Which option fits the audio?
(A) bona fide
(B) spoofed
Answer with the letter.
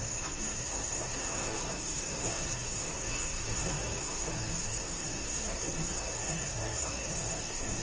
B